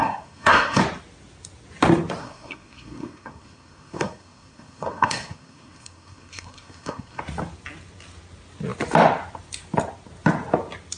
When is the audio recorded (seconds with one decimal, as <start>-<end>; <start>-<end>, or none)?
0.8-2.2; 7.2-11.0